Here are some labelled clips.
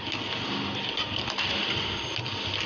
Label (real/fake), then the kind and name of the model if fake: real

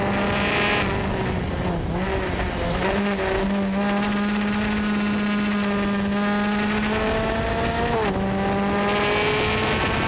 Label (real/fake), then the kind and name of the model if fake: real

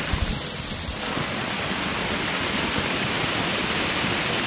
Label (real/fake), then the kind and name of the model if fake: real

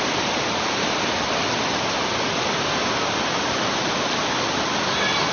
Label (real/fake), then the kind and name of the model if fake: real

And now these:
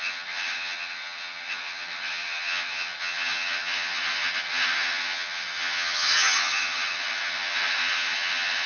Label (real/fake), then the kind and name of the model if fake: fake, vocoder, HiFi-GAN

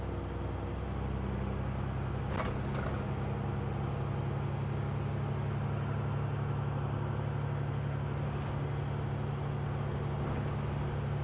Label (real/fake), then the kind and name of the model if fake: real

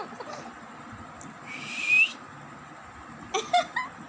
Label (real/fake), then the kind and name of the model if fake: real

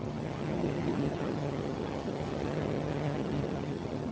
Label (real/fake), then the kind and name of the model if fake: fake, vocoder, HiFi-GAN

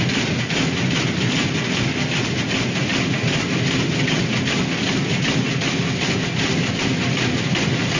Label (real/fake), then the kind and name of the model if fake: real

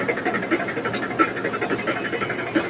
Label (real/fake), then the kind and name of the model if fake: real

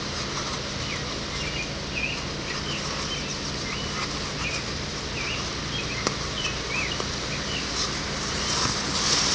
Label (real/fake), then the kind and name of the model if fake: real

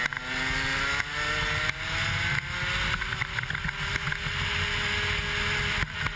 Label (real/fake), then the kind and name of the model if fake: real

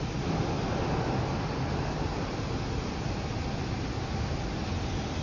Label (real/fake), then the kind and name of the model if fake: real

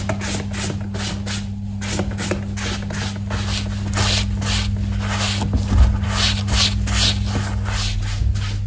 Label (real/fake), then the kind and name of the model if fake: real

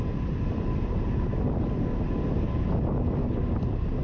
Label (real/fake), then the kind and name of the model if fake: real